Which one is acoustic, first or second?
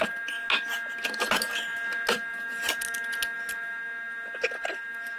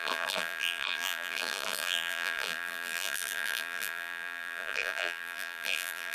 first